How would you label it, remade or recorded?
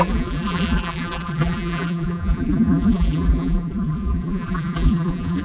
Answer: remade